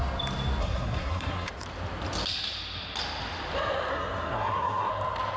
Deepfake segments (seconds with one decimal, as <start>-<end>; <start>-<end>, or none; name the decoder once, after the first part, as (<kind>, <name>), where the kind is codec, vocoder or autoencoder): 0.6-1.5 (codec, SNAC); 3.9-4.9